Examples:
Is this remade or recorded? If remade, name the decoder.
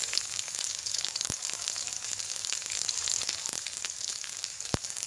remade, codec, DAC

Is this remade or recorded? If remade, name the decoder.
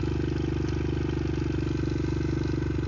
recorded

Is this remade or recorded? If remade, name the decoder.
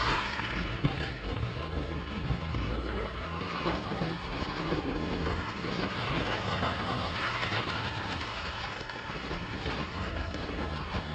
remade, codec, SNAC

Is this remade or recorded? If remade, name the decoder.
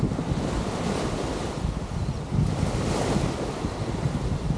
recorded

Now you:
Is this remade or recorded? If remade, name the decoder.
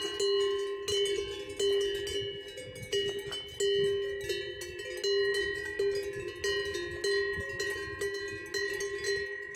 recorded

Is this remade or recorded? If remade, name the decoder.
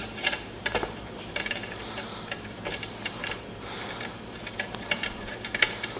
remade, vocoder, BigVGAN v2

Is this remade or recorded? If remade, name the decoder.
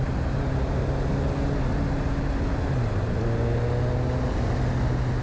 recorded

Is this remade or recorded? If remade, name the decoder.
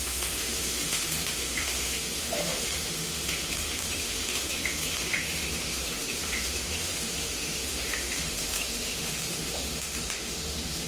remade, autoencoder, DAC-VAE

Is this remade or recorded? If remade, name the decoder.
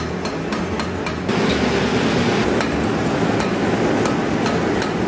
recorded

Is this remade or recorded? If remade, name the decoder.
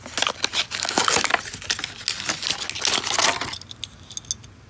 recorded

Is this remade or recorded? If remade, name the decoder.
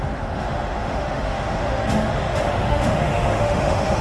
remade, autoencoder, DAC-VAE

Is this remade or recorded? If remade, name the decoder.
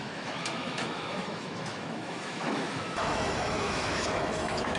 remade, autoencoder, DAC-VAE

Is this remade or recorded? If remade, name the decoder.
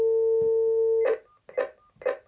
recorded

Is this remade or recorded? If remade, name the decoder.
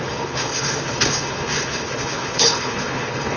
remade, codec, HILCodec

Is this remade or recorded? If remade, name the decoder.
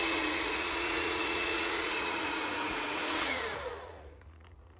remade, vocoder, Vocos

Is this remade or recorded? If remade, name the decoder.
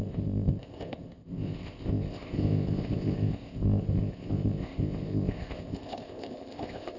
remade, codec, ZipCodec